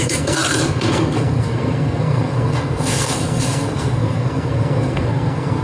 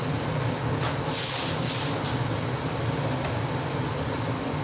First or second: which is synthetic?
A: first